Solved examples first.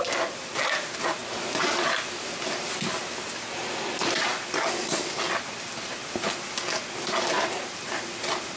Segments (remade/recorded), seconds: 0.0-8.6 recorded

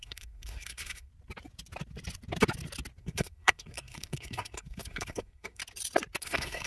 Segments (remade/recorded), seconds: 0.0-1.1 remade; 1.1-3.0 recorded; 3.0-5.6 remade; 5.6-6.2 recorded; 6.2-6.7 remade

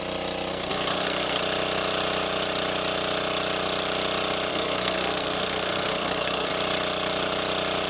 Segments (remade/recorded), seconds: 0.0-0.5 recorded; 0.5-1.4 remade; 1.4-4.5 recorded; 4.5-6.5 remade; 6.5-7.9 recorded